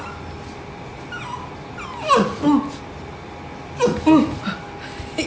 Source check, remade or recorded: recorded